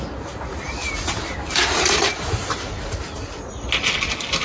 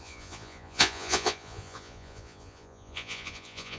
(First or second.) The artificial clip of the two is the second